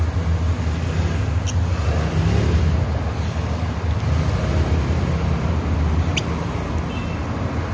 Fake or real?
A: real